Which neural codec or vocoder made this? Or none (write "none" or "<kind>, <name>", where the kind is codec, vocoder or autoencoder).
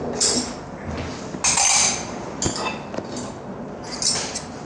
none